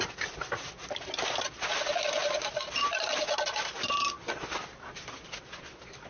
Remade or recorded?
recorded